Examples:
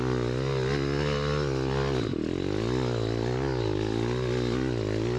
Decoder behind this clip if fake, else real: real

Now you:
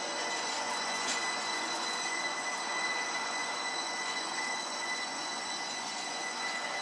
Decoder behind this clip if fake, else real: fake, vocoder, Vocos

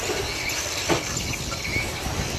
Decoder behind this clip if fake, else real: real